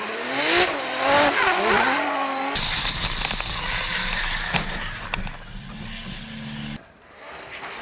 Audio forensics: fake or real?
real